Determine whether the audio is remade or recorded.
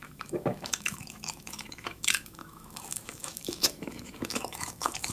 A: remade